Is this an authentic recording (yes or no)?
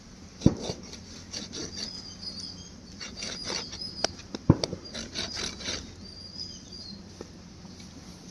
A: yes